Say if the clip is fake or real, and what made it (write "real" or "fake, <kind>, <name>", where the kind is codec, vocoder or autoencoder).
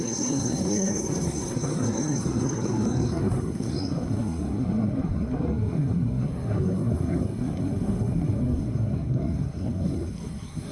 fake, codec, SNAC